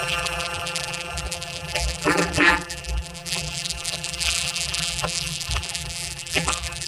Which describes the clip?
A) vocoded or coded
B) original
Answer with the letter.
A